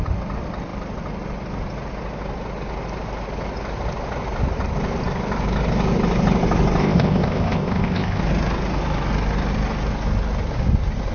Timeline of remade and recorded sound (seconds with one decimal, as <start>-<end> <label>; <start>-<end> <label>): 0.0-6.8 recorded; 6.8-8.2 remade; 8.2-11.1 recorded